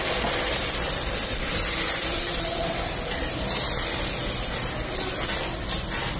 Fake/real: fake